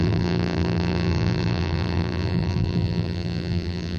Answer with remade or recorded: remade